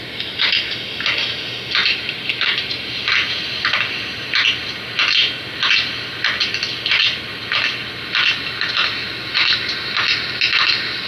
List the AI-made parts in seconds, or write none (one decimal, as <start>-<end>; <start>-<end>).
1.8-2.9